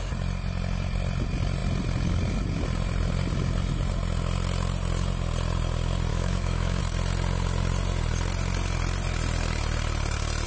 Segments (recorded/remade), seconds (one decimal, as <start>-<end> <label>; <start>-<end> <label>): 0.0-6.1 recorded; 6.1-6.8 remade; 6.8-10.5 recorded